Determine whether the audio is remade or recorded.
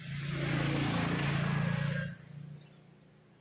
recorded